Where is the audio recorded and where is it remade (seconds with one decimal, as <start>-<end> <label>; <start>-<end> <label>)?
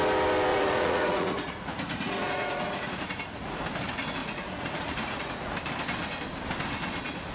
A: 0.0-0.5 recorded; 0.5-3.6 remade; 3.6-4.2 recorded; 4.2-5.5 remade; 5.5-7.3 recorded